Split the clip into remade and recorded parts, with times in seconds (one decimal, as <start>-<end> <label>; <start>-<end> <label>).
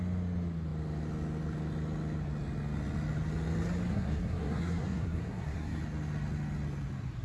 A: 0.0-3.9 recorded; 3.9-5.8 remade; 5.8-7.2 recorded